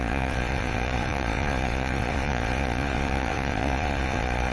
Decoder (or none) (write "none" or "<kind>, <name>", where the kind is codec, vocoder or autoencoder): vocoder, Vocos